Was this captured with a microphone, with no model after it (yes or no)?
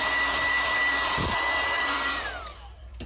no